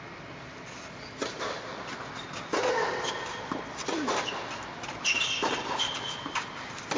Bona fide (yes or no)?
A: yes